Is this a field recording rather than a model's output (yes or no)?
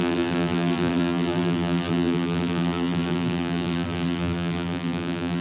no